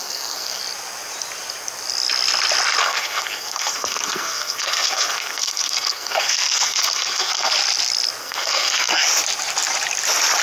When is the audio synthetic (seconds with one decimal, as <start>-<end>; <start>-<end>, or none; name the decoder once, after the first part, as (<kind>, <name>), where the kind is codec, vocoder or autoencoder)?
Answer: 0.0-0.6 (codec, SNAC); 2.8-7.5; 8.2-9.1